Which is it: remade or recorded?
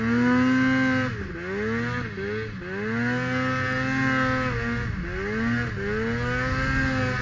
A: recorded